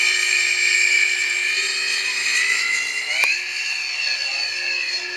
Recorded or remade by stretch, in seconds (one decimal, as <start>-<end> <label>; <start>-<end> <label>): 0.0-5.2 recorded